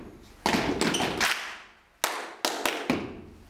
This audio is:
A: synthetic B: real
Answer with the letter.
B